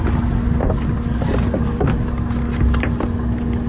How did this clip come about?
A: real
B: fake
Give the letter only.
A